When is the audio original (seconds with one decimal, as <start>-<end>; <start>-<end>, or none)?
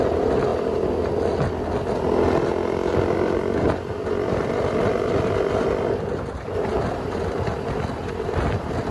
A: 0.0-8.9